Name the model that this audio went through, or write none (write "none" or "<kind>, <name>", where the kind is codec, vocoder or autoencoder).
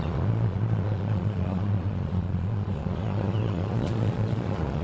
vocoder, Vocos